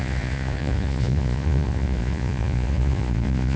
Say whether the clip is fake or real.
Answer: fake